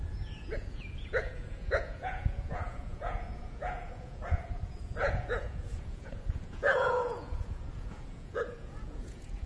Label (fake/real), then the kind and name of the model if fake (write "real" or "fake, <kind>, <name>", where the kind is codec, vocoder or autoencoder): fake, vocoder, Vocos